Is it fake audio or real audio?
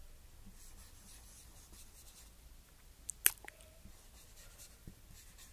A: real